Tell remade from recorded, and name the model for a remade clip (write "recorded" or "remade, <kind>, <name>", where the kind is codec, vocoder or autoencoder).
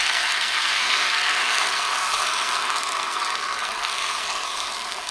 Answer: remade, codec, SNAC